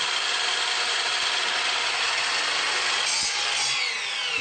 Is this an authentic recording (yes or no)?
yes